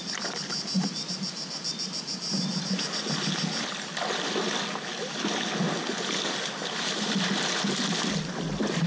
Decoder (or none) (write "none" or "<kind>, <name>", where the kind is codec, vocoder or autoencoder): none